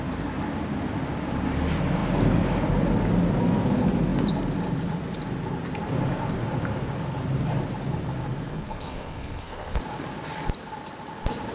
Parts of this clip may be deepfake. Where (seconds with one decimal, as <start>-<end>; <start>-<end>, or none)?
8.5-9.8